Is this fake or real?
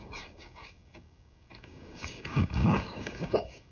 fake